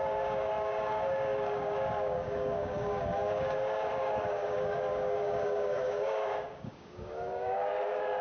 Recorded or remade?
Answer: remade